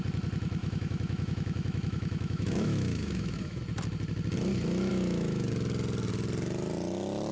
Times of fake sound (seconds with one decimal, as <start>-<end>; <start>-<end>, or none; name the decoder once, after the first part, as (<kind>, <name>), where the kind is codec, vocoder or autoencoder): 0.6-3.6 (autoencoder, DAC-VAE); 4.9-5.5